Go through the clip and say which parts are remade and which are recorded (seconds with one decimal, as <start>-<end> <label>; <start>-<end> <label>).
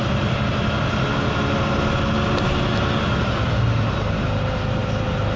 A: 0.0-5.4 recorded